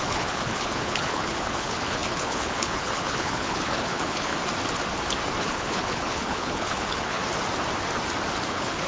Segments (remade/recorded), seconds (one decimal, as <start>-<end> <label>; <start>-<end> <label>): 0.0-4.3 remade; 4.3-5.4 recorded; 5.4-7.2 remade; 7.2-8.5 recorded; 8.5-8.9 remade